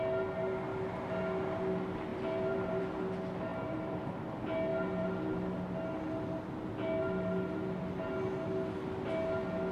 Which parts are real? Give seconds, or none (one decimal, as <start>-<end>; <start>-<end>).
0.0-2.1; 2.8-3.5; 4.0-9.7